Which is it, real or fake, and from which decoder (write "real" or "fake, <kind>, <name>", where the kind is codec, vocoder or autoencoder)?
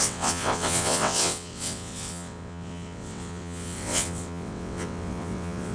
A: fake, vocoder, WaveNeXt